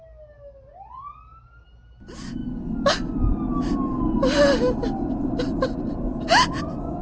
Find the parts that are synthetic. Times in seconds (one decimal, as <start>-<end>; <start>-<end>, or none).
none